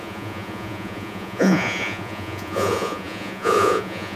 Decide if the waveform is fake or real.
fake